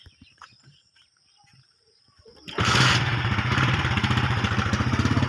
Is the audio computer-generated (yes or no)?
yes